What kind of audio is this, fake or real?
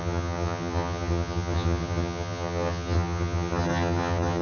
fake